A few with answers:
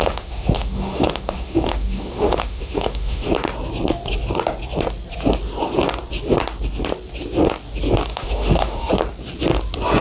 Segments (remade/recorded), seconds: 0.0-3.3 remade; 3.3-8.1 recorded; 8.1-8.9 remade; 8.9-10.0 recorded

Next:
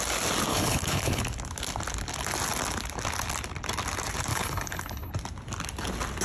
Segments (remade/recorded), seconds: 0.0-0.5 recorded; 0.5-1.2 remade; 1.2-4.3 recorded; 4.3-5.1 remade; 5.1-6.2 recorded

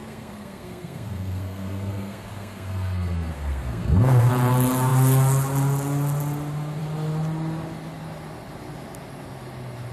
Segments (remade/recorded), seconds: 0.0-4.3 remade; 4.3-9.9 recorded

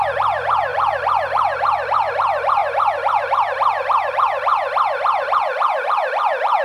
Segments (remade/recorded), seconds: 0.0-2.6 remade; 2.6-3.2 recorded; 3.2-4.5 remade; 4.5-5.2 recorded; 5.2-6.6 remade

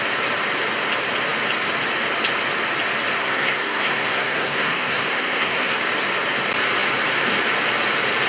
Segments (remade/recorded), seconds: 0.0-3.2 recorded; 3.2-5.8 remade; 5.8-8.3 recorded

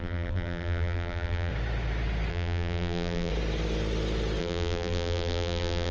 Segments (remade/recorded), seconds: 0.0-1.5 remade; 1.5-2.3 recorded; 2.3-3.3 remade; 3.3-4.4 recorded; 4.4-5.9 remade